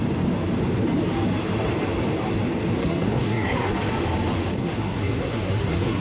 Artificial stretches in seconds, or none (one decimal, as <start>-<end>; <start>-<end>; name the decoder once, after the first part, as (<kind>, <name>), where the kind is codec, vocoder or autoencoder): 2.8-3.7 (codec, SNAC); 4.6-6.0